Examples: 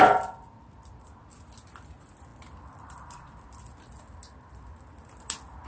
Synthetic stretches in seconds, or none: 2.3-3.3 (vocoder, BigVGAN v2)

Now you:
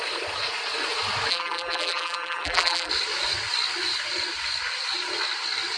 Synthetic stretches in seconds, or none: 1.3-2.9 (vocoder, BigVGAN v2)

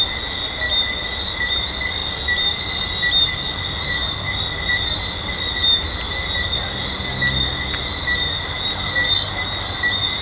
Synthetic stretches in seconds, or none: none

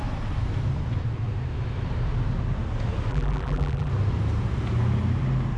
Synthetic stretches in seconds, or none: 3.1-3.9 (vocoder, BigVGAN v2)

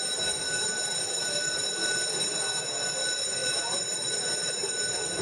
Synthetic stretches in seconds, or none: none

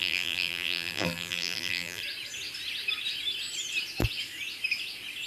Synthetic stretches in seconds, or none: 0.0-2.0 (vocoder, BigVGAN v2)

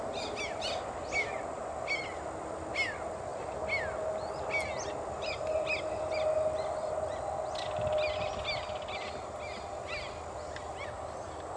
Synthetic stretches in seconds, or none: none